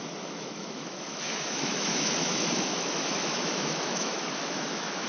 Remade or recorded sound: remade